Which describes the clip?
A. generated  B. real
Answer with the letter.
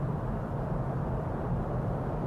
B